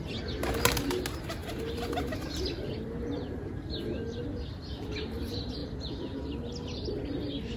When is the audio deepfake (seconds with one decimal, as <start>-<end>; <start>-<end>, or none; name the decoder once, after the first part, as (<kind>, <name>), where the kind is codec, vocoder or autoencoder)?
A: none